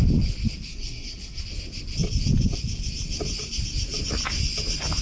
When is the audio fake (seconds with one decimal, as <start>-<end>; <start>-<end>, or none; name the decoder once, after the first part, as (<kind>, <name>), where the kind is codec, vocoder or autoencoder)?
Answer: 0.7-1.4 (codec, SNAC)